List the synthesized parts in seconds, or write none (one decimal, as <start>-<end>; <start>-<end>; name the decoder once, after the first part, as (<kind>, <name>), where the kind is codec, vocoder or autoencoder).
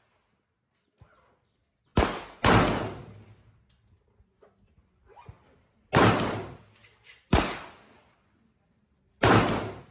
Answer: 6.8-7.4 (vocoder, BigVGAN v2)